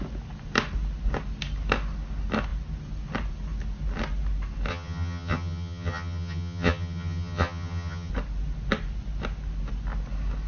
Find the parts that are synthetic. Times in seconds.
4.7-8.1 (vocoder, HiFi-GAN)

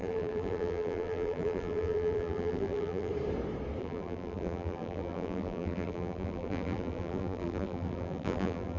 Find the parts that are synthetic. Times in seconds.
0.0-3.1 (vocoder, BigVGAN v2); 3.8-8.8

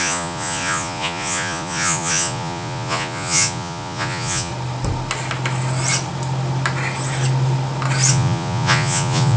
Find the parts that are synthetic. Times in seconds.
0.0-4.5 (vocoder, Vocos); 8.1-9.4

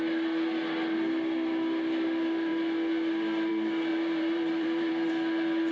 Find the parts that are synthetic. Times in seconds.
3.9-5.1 (vocoder, BigVGAN v2)

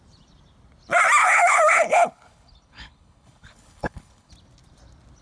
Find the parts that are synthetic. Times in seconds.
1.2-4.3 (codec, HILCodec)